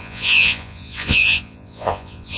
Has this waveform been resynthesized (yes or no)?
yes